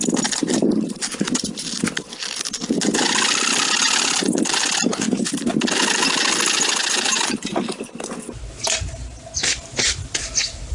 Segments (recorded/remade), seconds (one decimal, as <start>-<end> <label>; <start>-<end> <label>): 0.0-10.7 recorded

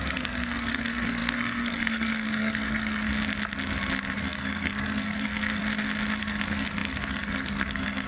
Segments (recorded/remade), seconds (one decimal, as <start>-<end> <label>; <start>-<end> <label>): 0.0-3.1 remade; 3.1-4.2 recorded; 4.2-5.6 remade; 5.6-6.2 recorded; 6.2-8.1 remade

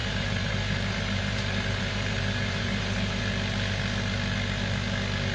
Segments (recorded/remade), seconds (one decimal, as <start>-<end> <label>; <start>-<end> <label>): 0.0-3.2 remade; 3.2-5.3 recorded

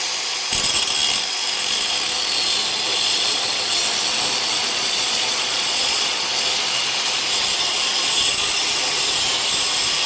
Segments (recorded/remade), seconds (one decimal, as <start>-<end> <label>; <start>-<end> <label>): 0.0-2.9 recorded; 2.9-3.7 remade; 3.7-4.6 recorded; 4.6-6.3 remade; 6.3-10.1 recorded

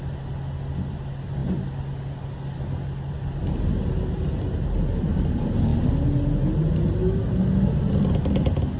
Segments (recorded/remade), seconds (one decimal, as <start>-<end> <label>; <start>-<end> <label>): 0.0-8.8 recorded

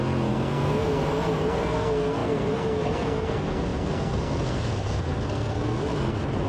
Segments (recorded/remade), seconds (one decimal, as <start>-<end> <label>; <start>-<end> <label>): 0.0-6.5 remade

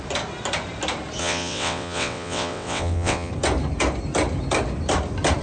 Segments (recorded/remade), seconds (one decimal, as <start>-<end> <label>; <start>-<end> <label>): 0.0-1.2 recorded; 1.2-3.3 remade; 3.3-5.4 recorded

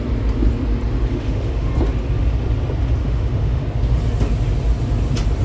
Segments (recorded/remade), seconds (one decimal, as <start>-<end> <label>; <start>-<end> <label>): 0.0-1.1 recorded; 1.1-1.7 remade; 1.7-3.0 recorded; 3.0-3.6 remade; 3.6-5.4 recorded